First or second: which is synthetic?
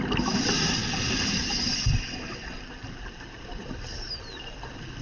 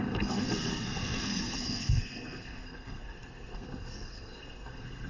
second